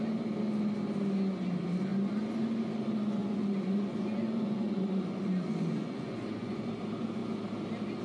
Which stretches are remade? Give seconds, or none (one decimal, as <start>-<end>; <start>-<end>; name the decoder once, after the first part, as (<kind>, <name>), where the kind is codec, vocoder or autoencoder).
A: 3.2-6.6 (vocoder, Vocos)